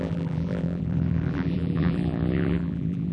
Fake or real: fake